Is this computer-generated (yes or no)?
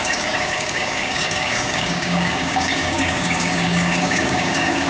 yes